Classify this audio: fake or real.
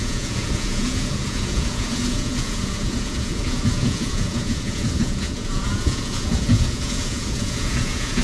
fake